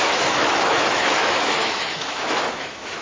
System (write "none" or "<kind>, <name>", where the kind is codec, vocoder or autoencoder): autoencoder, DAC-VAE